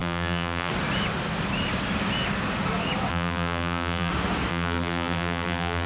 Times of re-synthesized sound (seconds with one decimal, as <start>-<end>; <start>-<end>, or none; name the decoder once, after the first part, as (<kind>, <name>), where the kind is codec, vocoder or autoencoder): 0.0-0.7 (vocoder, BigVGAN v2); 3.1-4.1; 4.5-5.9